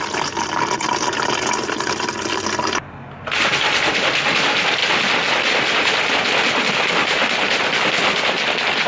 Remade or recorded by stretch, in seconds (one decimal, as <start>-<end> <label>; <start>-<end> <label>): 0.0-4.8 recorded; 4.8-6.1 remade; 6.1-8.9 recorded